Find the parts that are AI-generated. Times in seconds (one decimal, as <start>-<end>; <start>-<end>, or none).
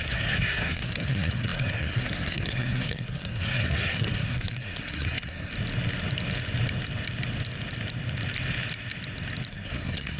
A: 0.0-5.5; 9.5-10.2